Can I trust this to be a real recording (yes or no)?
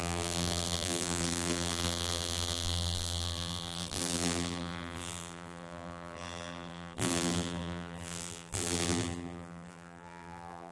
no